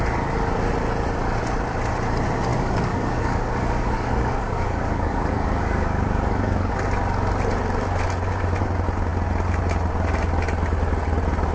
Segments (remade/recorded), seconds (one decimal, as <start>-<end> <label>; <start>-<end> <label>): 0.0-2.5 recorded; 2.5-6.7 remade; 6.7-11.5 recorded